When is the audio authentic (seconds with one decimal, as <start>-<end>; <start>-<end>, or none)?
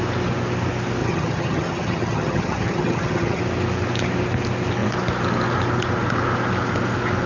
0.0-1.0; 3.4-7.3